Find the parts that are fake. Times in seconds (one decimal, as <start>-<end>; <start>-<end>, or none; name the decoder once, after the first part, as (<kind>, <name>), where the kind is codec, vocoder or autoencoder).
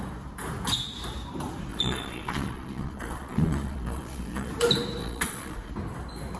1.7-4.5 (vocoder, Vocos); 5.0-5.7